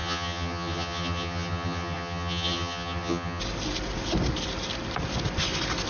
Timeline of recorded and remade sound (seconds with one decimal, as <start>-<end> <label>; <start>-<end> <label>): 0.0-3.4 remade; 3.4-5.9 recorded